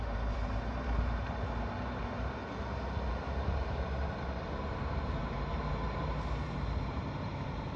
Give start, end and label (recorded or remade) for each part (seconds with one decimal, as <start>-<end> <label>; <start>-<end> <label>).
0.0-2.4 remade; 2.4-3.1 recorded; 3.1-7.8 remade